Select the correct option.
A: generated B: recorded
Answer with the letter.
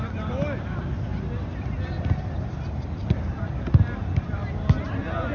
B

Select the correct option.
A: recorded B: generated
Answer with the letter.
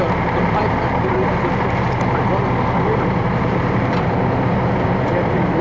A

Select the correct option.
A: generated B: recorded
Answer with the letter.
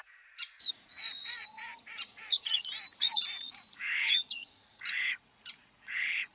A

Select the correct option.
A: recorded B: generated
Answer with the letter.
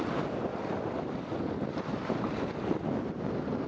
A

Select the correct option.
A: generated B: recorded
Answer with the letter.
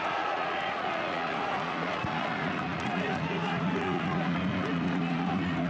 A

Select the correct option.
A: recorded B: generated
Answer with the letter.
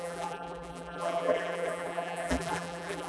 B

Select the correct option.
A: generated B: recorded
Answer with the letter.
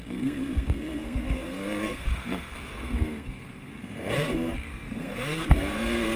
A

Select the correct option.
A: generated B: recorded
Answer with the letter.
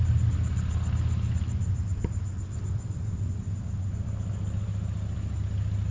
B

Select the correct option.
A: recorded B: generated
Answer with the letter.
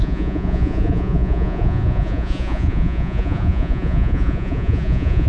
B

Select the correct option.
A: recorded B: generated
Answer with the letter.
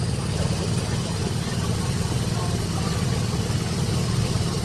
A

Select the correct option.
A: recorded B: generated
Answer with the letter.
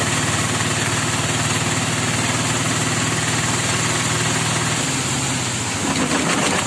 A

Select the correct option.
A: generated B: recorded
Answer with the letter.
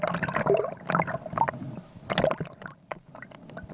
B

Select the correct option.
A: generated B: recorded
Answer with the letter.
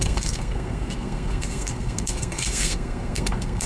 A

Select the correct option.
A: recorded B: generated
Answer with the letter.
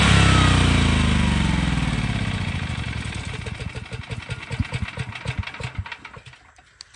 A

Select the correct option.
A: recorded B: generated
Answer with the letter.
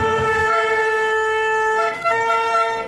B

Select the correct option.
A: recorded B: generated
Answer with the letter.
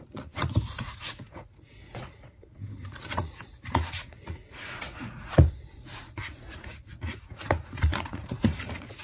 B